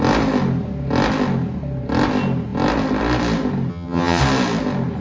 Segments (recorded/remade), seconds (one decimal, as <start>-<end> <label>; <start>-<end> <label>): 0.0-3.7 recorded; 3.7-4.2 remade; 4.2-5.0 recorded